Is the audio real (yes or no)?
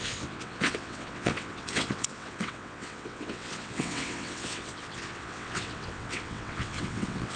no